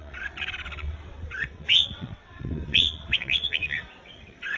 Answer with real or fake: fake